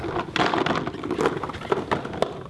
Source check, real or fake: real